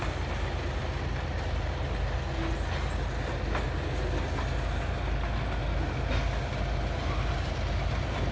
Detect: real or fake real